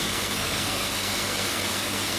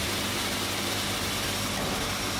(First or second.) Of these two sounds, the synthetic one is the first